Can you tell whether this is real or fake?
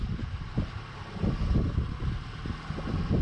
real